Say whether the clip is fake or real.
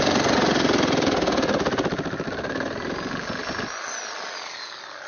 real